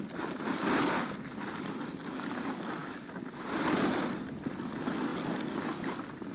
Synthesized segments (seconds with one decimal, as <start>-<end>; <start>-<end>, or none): none